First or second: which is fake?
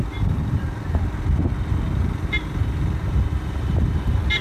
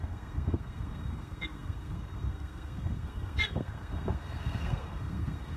second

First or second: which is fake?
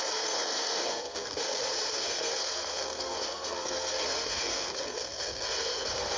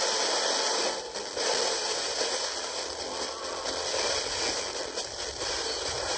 first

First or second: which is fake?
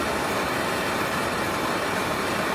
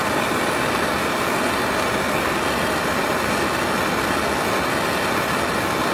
first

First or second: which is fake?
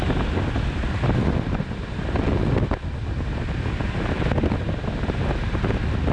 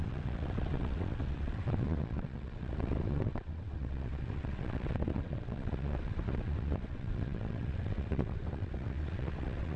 second